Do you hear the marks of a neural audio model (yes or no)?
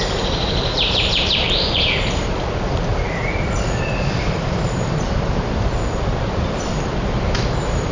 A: yes